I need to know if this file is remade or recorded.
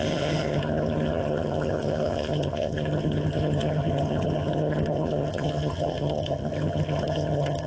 remade